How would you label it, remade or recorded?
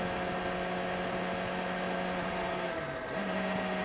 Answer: recorded